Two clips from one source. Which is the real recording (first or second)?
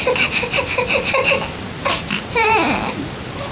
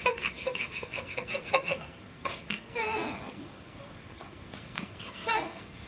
first